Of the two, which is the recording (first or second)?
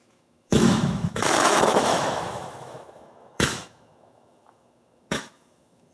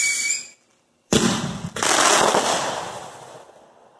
second